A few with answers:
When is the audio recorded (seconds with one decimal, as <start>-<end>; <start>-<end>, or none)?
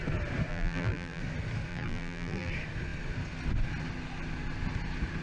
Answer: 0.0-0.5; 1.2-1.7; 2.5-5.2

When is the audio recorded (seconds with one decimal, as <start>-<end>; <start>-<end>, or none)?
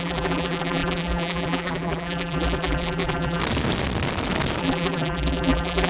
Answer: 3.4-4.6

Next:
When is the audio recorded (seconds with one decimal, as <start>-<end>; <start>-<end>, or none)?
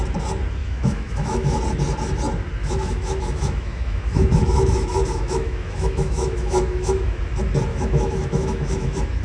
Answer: 0.0-0.6; 1.6-2.6; 7.2-7.7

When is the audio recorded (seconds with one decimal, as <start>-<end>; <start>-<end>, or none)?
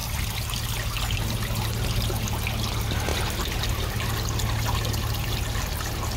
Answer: 0.0-6.2